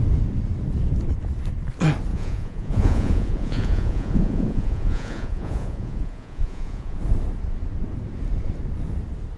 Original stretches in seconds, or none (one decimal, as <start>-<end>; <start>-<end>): 0.0-2.1; 7.0-9.4